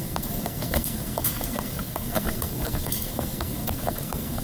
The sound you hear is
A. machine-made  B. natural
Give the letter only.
A